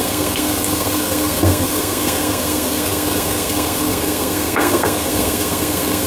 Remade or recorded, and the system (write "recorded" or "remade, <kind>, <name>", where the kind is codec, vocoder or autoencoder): remade, codec, SNAC